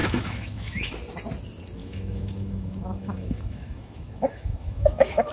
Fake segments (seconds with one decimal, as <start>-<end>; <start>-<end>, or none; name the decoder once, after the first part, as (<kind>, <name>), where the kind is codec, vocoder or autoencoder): 0.0-0.9 (autoencoder, DAC-VAE); 1.8-5.3